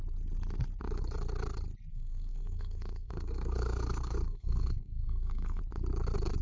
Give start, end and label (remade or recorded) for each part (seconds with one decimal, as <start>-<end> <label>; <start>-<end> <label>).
0.0-1.9 recorded; 1.9-5.6 remade; 5.6-6.4 recorded